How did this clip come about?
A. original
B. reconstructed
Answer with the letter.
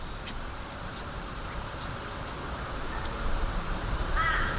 B